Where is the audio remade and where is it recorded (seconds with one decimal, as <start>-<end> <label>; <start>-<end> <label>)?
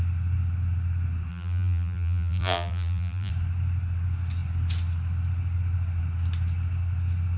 0.0-1.3 recorded; 1.3-3.3 remade; 3.3-7.4 recorded